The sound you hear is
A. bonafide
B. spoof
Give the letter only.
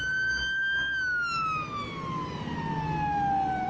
A